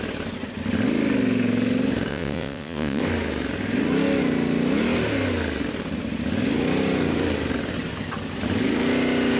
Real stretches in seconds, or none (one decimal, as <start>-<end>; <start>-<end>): 0.0-2.1; 3.0-9.4